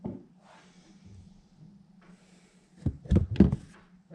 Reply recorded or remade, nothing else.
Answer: recorded